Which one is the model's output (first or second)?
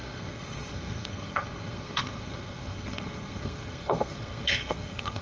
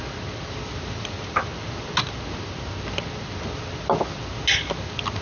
first